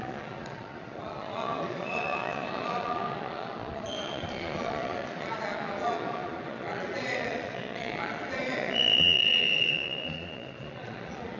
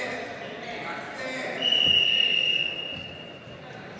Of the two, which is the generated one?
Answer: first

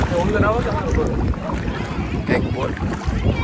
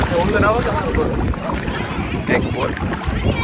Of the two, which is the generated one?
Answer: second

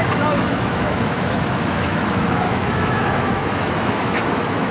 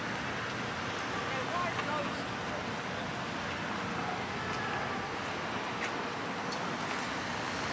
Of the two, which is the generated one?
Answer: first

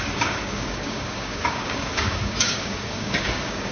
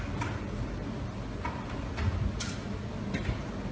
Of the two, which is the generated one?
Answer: first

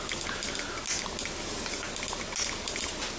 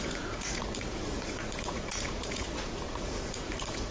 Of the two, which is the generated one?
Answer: second